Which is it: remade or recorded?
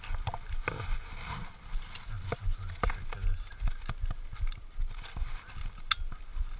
recorded